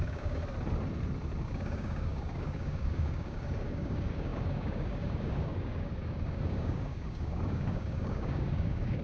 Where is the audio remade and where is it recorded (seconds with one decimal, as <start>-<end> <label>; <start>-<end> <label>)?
0.0-0.4 remade; 0.4-1.4 recorded; 1.4-9.0 remade